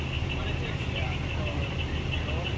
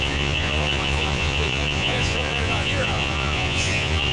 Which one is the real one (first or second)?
first